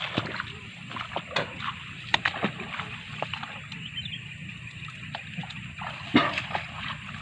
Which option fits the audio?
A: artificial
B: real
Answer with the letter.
B